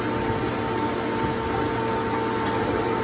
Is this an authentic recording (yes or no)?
yes